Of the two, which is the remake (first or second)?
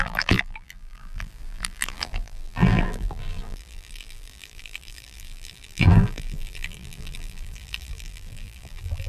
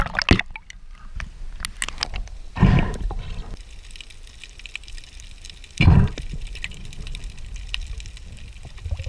first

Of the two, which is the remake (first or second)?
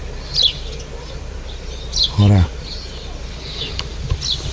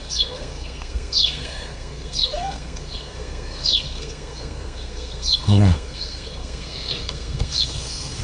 second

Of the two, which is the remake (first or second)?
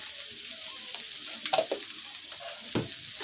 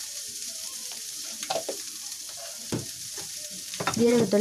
second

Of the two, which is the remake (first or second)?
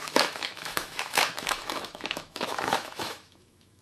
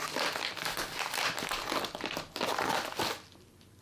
first